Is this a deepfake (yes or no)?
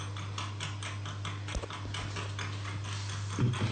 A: no